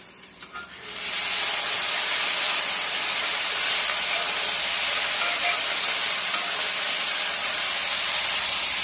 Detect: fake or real fake